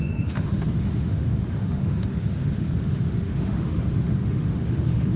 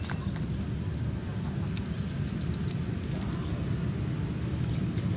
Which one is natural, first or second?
second